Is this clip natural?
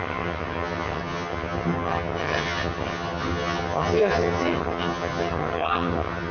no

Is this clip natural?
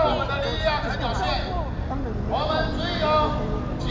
yes